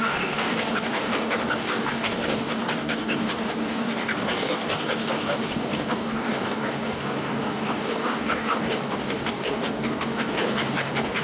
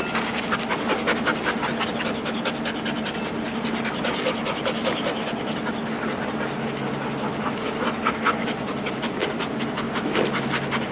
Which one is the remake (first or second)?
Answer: first